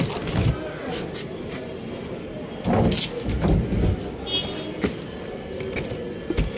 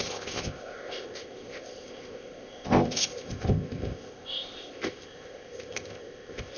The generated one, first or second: second